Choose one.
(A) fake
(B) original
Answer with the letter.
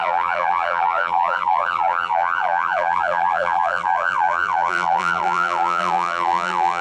A